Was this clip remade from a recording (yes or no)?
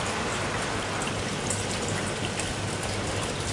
no